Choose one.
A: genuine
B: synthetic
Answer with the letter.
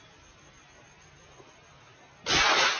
A